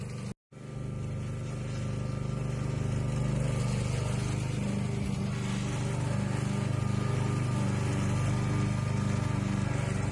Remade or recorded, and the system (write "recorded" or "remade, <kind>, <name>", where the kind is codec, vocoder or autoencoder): recorded